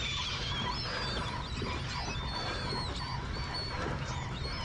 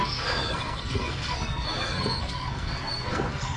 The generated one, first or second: second